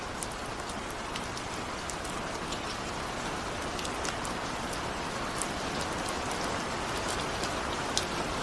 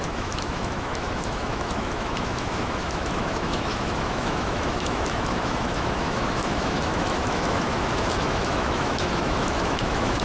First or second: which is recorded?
first